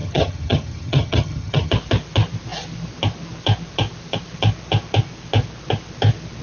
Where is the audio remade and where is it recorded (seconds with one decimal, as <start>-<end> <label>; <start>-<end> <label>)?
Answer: 0.0-1.7 remade; 1.7-6.4 recorded

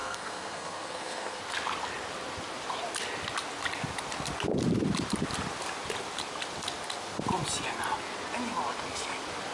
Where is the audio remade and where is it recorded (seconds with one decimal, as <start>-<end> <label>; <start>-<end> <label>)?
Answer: 0.0-1.4 remade; 1.4-9.5 recorded

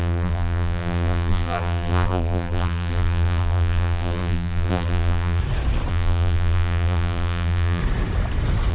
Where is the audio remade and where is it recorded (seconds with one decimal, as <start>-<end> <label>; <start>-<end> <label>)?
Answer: 0.0-5.4 remade; 5.4-5.9 recorded; 5.9-7.8 remade; 7.8-8.7 recorded